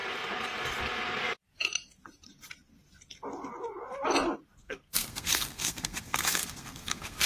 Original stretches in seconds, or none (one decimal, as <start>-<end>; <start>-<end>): 0.0-4.6